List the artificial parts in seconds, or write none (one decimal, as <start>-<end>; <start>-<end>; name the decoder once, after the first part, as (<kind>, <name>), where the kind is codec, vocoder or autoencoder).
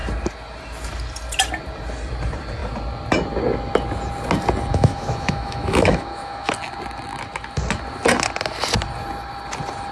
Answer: 4.7-6.5 (autoencoder, DAC-VAE)